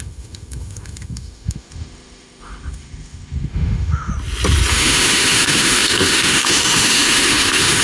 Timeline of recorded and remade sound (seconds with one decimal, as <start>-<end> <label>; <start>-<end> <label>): 0.0-4.1 remade; 4.1-4.7 recorded; 4.7-7.8 remade